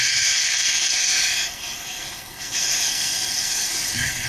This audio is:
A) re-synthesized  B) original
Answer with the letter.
A